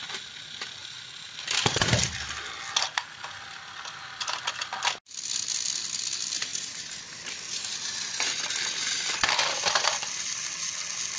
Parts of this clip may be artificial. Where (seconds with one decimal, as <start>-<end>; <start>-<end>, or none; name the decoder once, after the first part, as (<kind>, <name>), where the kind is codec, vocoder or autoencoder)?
none